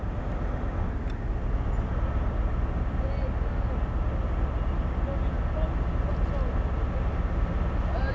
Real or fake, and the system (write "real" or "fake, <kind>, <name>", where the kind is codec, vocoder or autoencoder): real